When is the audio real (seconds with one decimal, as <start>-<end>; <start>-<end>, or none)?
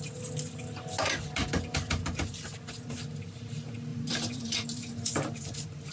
0.0-3.9